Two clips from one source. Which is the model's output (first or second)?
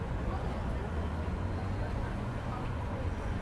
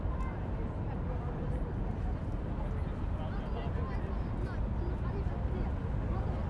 first